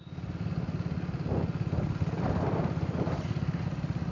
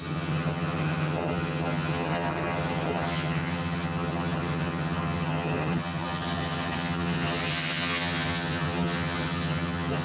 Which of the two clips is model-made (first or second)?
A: second